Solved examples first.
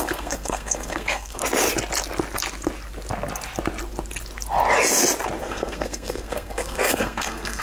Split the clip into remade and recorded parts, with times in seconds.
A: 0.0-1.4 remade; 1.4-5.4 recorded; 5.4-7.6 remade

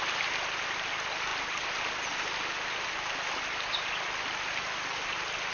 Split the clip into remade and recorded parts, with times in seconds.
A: 0.0-5.5 recorded

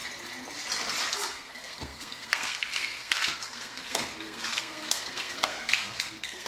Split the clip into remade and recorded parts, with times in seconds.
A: 0.0-1.1 recorded; 1.1-6.5 remade

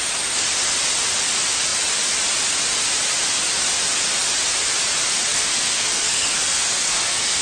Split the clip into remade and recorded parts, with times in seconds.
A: 0.0-5.3 recorded; 5.3-7.4 remade

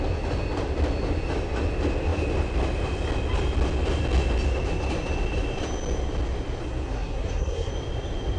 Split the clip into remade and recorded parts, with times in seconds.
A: 0.0-6.6 recorded; 6.6-7.7 remade; 7.7-8.4 recorded

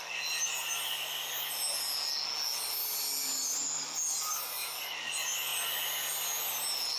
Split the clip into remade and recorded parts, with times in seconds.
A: 0.0-7.0 recorded